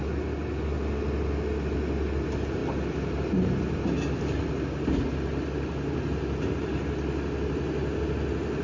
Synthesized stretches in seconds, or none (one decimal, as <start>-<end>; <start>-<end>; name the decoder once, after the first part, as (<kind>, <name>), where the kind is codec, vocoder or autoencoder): none